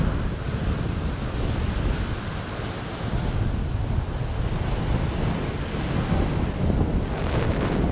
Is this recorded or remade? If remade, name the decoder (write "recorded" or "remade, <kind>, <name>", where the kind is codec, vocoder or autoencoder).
recorded